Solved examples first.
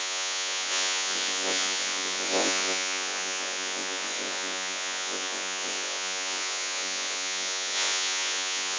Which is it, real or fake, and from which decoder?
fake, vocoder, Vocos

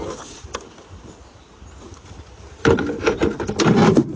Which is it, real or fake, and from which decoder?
real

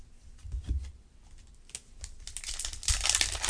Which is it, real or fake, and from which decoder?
real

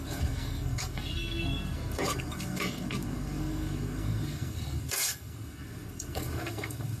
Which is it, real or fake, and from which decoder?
fake, codec, SNAC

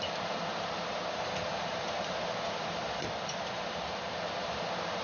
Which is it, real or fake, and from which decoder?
fake, vocoder, BigVGAN v2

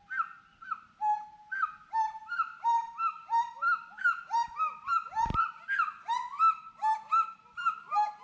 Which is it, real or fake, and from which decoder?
real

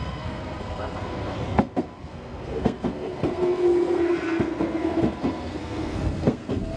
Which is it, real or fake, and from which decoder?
fake, codec, SNAC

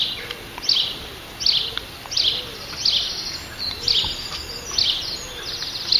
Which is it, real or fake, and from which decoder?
real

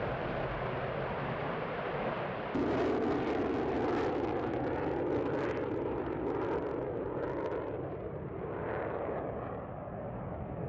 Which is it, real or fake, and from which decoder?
real